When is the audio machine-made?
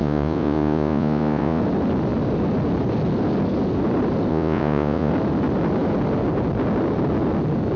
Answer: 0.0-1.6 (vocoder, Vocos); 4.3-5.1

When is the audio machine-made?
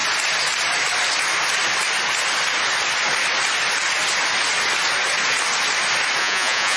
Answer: 6.2-6.8 (vocoder, Vocos)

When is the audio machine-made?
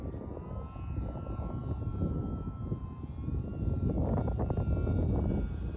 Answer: none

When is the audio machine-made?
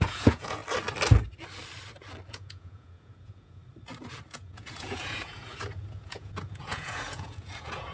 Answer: 0.0-0.6 (vocoder, Vocos); 2.3-3.6; 4.3-7.9